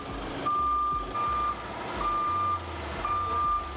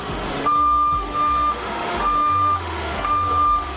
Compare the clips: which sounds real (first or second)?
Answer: first